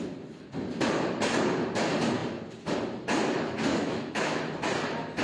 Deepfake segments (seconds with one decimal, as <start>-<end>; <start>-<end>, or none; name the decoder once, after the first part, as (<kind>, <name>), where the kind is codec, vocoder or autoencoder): 3.7-4.4 (autoencoder, DAC-VAE)